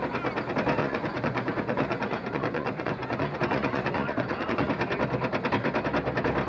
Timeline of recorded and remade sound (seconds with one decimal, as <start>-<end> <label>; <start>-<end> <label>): 0.0-0.8 recorded; 0.8-4.7 remade; 4.7-6.5 recorded